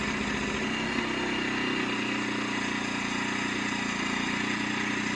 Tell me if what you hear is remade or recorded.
recorded